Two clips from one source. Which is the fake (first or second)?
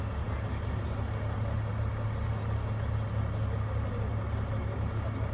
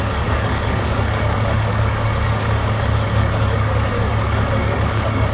second